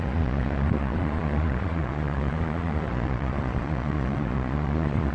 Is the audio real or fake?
fake